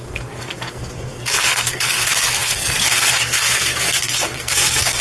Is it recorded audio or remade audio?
remade